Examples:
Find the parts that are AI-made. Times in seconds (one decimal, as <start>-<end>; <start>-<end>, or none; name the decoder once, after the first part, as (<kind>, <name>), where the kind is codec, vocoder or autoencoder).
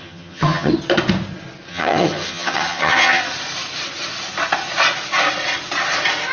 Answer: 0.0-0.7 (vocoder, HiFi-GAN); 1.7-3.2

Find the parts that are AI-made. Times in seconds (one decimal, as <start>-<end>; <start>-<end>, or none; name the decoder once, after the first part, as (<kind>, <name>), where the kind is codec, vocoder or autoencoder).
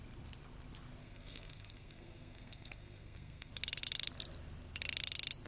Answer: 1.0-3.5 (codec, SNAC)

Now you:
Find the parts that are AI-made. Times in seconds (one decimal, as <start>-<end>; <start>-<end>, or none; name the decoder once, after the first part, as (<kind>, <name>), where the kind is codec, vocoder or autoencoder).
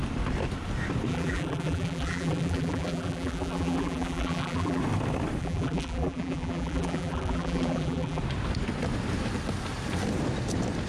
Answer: 1.1-4.8 (vocoder, BigVGAN v2); 5.4-8.2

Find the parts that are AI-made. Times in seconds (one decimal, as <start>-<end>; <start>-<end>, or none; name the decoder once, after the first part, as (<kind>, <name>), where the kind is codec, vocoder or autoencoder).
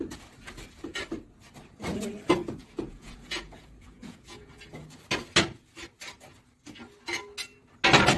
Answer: 2.6-4.5 (vocoder, Vocos)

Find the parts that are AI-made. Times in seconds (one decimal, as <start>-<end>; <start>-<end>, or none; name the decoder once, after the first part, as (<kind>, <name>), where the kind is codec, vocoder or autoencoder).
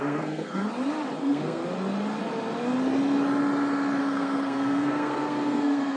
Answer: 0.0-0.6 (codec, SNAC); 1.2-1.6; 4.0-6.0